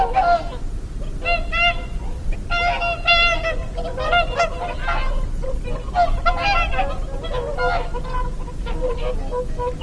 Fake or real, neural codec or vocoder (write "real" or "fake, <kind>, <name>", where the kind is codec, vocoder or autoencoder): real